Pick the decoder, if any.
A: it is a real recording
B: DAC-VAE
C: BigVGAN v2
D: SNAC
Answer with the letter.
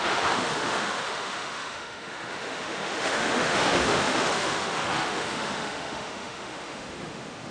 B